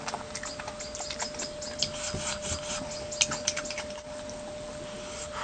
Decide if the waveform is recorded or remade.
recorded